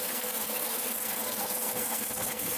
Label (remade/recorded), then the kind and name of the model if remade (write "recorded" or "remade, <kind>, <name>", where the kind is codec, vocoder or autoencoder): remade, codec, SNAC